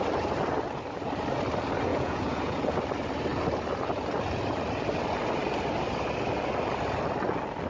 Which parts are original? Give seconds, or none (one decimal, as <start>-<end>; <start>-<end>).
0.0-1.9; 2.8-7.7